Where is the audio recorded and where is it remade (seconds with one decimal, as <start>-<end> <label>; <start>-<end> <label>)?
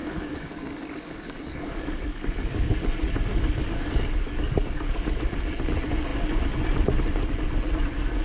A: 0.0-2.8 remade; 2.8-3.3 recorded; 3.3-5.0 remade; 5.0-8.2 recorded